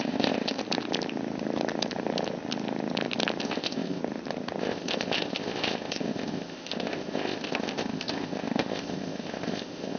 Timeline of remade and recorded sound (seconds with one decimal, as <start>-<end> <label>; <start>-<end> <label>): 0.0-0.6 remade; 0.6-3.4 recorded; 3.4-4.0 remade; 4.0-4.6 recorded; 4.6-10.0 remade